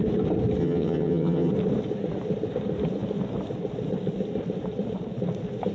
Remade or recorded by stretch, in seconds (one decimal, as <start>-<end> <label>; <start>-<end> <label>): 0.0-0.6 recorded; 0.6-1.5 remade; 1.5-5.7 recorded